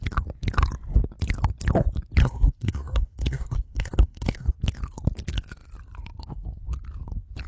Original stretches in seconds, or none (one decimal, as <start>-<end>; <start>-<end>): 0.0-2.2; 4.5-7.5

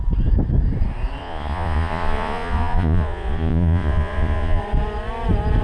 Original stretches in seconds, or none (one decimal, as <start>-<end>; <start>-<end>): 0.0-1.2; 4.6-5.6

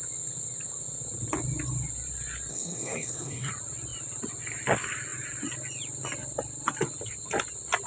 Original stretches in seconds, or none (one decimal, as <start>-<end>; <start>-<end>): 0.0-2.5; 3.5-7.9